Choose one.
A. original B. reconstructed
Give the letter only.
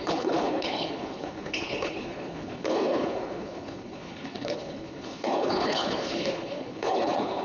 B